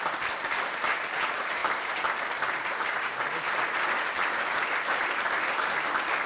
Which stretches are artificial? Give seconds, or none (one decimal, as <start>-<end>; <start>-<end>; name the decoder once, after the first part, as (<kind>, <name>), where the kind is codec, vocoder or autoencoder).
none